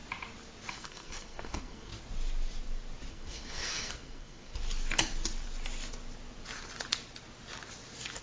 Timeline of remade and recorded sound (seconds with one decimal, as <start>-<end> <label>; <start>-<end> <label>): 0.0-0.7 recorded; 0.7-1.9 remade; 1.9-3.1 recorded; 3.1-4.5 remade; 4.5-8.2 recorded